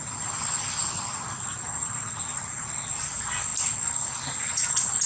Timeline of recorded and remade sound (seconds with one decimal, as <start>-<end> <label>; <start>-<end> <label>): 0.0-5.1 recorded